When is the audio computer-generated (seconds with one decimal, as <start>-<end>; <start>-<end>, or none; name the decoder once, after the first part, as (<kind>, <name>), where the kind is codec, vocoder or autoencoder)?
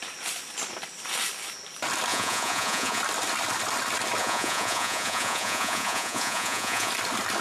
2.1-3.0 (vocoder, Vocos); 4.2-6.9